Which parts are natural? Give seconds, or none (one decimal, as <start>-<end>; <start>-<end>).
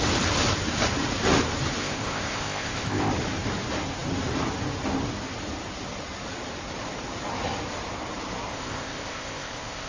0.0-1.8; 3.1-8.5